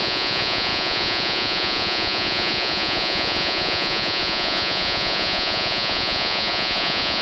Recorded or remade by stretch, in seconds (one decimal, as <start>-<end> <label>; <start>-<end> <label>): 0.0-7.2 remade